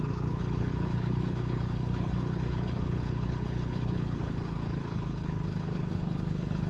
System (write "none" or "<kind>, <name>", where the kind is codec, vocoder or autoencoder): codec, HILCodec